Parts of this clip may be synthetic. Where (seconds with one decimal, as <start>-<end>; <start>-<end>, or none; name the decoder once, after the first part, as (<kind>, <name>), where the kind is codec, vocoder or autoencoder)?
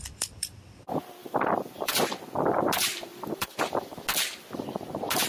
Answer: 1.2-1.9 (vocoder, BigVGAN v2); 3.1-4.0